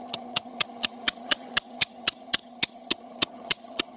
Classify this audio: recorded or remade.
remade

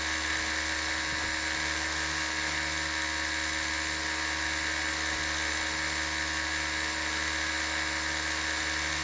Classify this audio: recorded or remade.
recorded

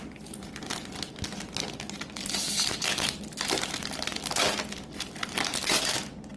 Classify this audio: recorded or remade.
recorded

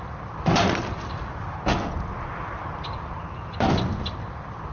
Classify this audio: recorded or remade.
recorded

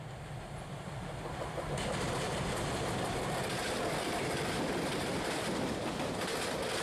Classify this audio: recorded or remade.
recorded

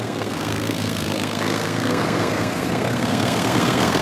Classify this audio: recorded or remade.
remade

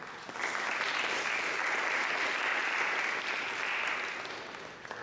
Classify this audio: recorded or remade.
recorded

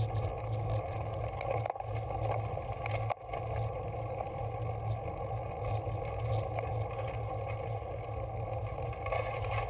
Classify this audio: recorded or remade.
recorded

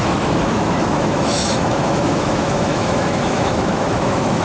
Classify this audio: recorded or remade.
remade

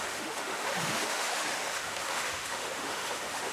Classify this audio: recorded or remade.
remade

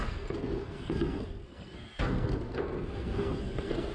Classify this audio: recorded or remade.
remade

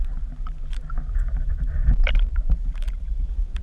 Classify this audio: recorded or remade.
remade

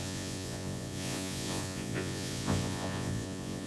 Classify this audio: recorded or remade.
remade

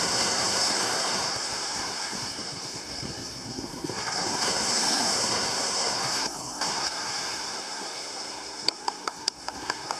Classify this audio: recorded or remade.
remade